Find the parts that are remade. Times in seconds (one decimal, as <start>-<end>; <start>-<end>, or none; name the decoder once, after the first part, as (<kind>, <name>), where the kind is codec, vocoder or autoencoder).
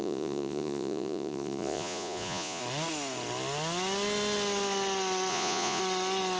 0.0-2.6 (vocoder, Vocos); 5.3-5.8